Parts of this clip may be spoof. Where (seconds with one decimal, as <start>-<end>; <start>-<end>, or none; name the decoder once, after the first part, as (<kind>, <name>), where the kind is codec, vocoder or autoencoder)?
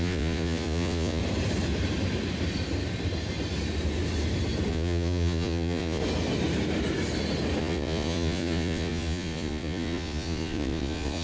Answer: 0.0-1.2 (vocoder, Vocos); 4.7-6.0; 7.6-11.2